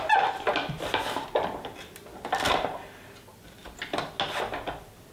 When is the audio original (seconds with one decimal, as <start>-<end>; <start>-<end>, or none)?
0.0-5.1